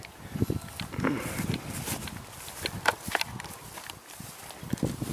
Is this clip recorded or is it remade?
recorded